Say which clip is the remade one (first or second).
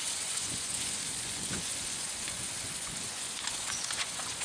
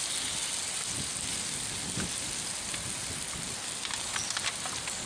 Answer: first